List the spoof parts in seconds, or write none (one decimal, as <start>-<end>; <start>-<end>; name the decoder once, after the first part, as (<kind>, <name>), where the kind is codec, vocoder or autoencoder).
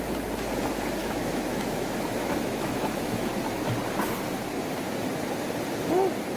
1.0-3.4 (autoencoder, DAC-VAE)